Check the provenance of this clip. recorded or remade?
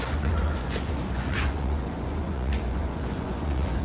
remade